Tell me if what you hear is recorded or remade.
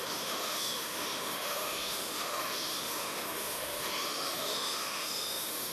remade